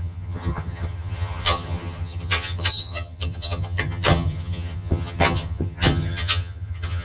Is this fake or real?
fake